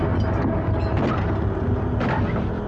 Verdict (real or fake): real